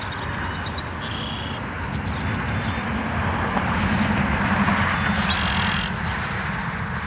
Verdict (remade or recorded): recorded